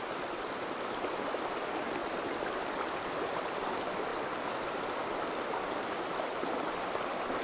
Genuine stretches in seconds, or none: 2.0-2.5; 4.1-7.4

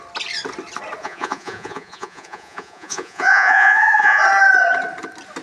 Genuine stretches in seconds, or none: 0.0-1.0; 4.2-5.4

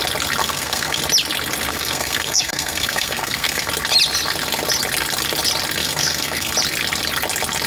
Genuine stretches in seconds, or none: 0.0-0.4; 1.0-1.7; 3.7-5.8; 6.5-7.7

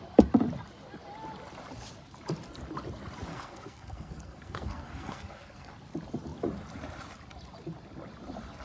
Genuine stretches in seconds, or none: 0.0-3.3; 5.7-8.6

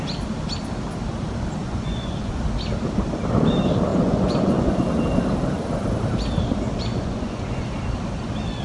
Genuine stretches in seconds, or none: 0.0-1.6; 2.4-3.9; 4.7-6.9; 7.6-8.6

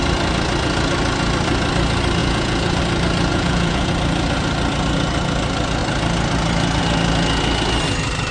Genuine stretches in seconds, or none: 0.0-2.2; 2.8-3.3; 3.9-8.3

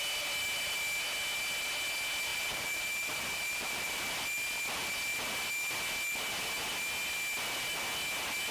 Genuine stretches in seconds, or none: 0.0-2.3; 4.0-8.5